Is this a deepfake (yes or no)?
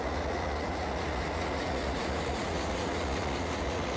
yes